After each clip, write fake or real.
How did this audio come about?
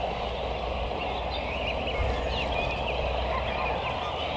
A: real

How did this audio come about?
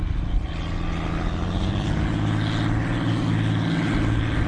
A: real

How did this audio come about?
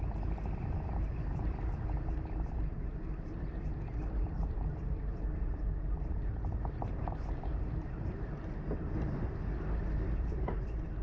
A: fake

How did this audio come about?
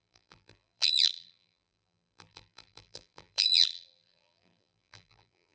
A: fake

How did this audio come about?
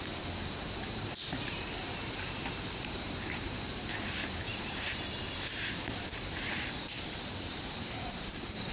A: fake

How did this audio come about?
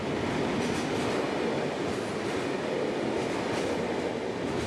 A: real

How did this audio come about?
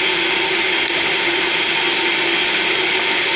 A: real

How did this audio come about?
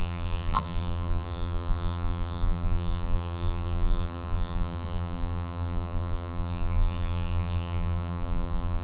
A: fake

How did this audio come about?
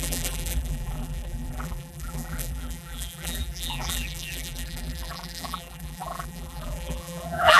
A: fake